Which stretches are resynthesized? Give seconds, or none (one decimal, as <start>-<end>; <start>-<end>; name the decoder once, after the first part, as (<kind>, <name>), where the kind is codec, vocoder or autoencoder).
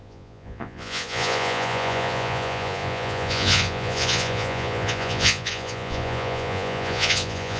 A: 0.0-7.6 (vocoder, Vocos)